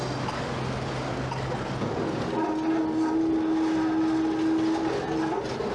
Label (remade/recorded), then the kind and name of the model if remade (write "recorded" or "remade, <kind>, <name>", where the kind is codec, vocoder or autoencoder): recorded